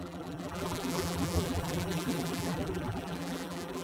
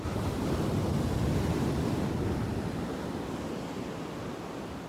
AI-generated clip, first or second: first